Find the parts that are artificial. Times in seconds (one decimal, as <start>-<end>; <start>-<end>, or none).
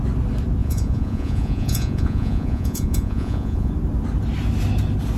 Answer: 0.6-3.7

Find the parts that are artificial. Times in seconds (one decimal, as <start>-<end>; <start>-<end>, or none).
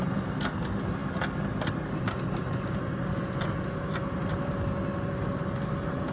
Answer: none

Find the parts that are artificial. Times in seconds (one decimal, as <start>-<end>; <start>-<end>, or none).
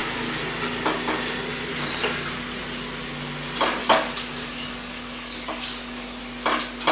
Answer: 3.8-6.2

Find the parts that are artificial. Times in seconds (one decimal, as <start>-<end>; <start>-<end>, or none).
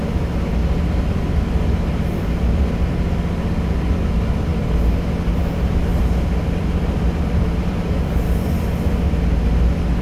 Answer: 0.6-2.2; 5.9-8.1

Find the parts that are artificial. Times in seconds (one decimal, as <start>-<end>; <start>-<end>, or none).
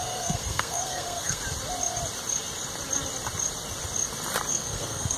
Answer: 0.0-1.4; 4.5-5.2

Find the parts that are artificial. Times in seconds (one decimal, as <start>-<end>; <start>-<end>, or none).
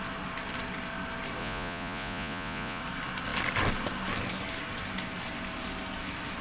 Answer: 1.4-2.8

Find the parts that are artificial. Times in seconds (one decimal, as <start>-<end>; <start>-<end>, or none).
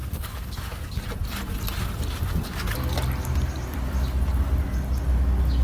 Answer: 0.0-1.0